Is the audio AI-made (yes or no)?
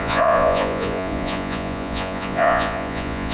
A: yes